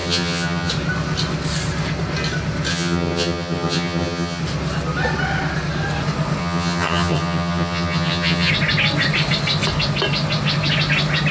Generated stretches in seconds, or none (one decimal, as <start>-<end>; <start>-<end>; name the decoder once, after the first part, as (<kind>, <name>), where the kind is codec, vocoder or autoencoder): 0.0-0.7 (vocoder, HiFi-GAN); 2.7-4.4; 6.4-8.5